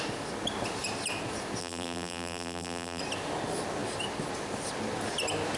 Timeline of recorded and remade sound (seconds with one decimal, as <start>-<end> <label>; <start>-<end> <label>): 0.0-1.6 recorded; 1.6-3.0 remade; 3.0-5.6 recorded